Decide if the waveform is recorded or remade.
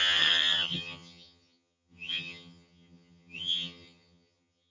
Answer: remade